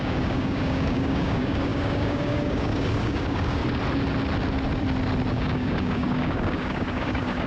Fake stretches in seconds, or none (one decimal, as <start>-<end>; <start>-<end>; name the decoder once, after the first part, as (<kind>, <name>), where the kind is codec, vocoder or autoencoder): 0.0-3.6 (codec, DAC); 5.3-7.5